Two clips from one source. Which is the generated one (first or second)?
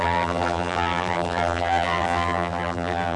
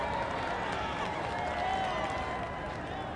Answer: first